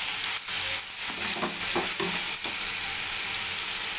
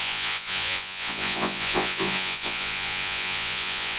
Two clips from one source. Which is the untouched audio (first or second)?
first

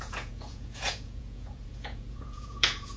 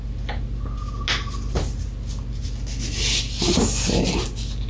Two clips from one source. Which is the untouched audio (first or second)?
second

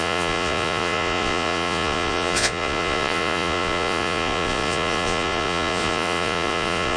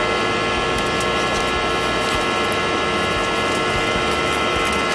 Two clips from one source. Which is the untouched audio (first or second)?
second